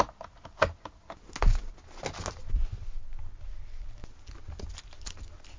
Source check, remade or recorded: recorded